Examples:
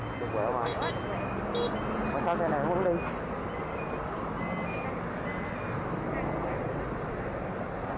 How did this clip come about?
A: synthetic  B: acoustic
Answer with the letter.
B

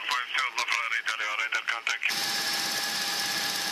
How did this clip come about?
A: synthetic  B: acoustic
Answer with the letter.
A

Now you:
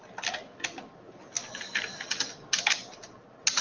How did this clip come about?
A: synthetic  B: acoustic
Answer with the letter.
B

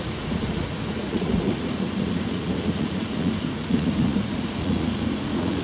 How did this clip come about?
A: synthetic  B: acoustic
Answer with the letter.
A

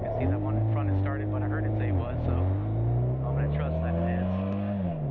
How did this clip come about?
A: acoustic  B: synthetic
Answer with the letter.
A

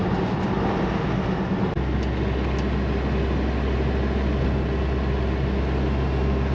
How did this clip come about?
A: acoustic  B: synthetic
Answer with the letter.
A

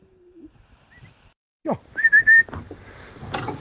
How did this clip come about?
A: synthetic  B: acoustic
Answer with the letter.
B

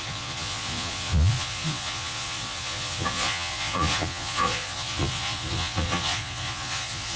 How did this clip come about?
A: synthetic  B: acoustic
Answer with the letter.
A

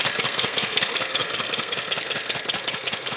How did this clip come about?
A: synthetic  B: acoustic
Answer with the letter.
A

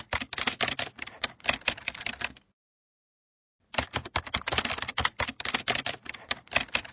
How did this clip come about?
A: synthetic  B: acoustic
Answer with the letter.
B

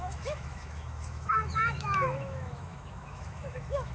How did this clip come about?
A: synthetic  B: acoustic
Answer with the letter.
A